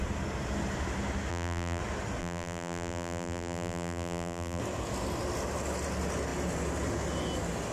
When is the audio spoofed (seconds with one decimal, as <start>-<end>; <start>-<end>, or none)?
1.3-1.8; 2.2-4.6